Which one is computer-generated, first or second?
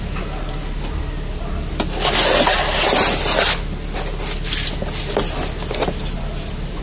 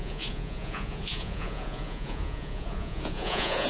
second